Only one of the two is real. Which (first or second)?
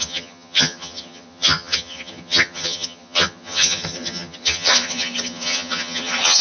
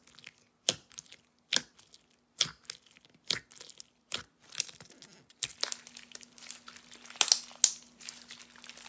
second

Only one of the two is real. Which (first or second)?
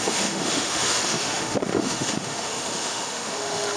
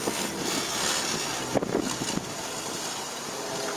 second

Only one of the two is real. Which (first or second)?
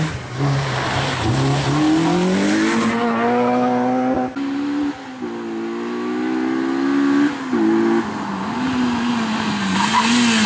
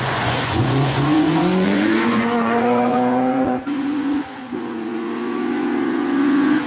first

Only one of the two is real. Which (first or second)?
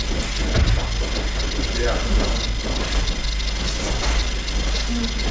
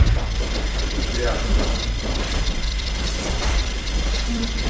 first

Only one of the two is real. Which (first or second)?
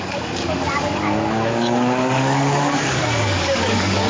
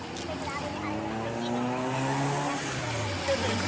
second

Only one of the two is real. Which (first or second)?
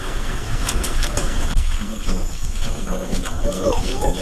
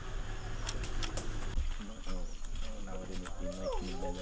second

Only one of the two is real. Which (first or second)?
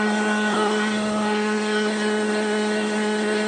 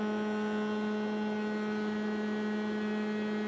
second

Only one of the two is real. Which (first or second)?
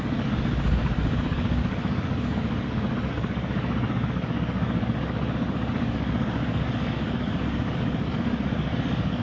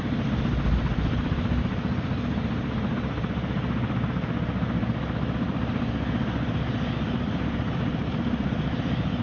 second